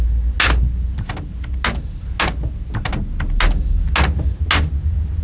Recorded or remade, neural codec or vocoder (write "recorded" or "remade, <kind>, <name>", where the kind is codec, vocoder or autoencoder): recorded